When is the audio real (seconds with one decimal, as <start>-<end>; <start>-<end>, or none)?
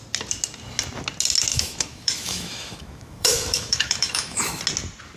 0.0-1.5; 4.6-5.2